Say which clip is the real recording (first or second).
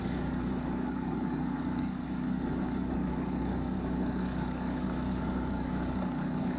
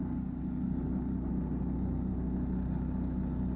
second